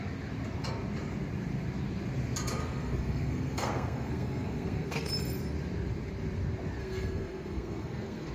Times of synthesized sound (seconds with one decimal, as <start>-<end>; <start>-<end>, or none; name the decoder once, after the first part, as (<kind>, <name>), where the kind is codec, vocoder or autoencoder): 2.6-5.1 (codec, SNAC); 6.8-8.3